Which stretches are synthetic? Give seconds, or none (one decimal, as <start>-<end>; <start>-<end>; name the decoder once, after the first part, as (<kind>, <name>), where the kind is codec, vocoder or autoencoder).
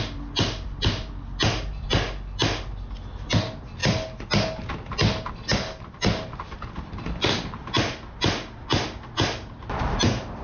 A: none